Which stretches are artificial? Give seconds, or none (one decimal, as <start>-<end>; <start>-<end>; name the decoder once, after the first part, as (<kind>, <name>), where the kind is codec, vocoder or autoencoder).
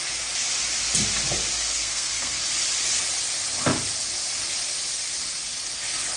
1.7-2.4 (codec, SNAC)